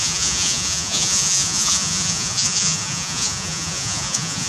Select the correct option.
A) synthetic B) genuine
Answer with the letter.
A